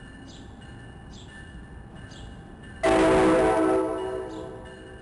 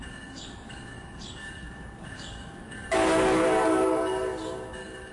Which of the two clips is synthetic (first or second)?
second